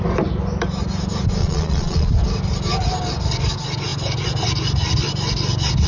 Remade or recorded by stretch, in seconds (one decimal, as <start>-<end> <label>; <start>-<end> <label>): 0.0-1.4 recorded; 1.4-2.1 remade; 2.1-5.9 recorded